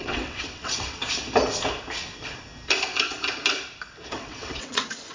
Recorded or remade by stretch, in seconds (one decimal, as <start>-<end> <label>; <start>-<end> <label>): 0.0-1.0 remade; 1.0-4.1 recorded; 4.1-5.1 remade